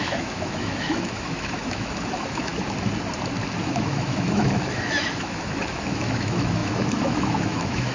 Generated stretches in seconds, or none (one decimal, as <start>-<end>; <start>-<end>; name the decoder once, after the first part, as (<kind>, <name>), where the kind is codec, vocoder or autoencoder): 0.0-2.5 (autoencoder, DAC-VAE); 3.6-7.9